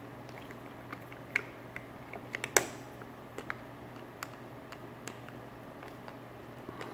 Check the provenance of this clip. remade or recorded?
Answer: recorded